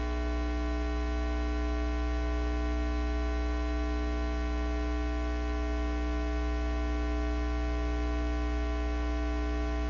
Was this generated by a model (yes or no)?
no